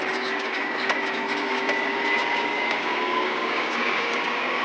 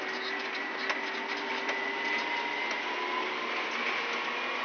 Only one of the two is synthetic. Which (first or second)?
first